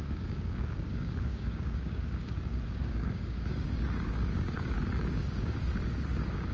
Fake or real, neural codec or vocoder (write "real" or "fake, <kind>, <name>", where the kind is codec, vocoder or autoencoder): fake, codec, DAC